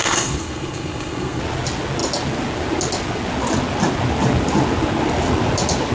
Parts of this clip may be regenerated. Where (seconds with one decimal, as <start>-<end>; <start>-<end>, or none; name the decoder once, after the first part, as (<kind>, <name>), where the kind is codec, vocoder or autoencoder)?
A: 0.0-1.4 (codec, SNAC)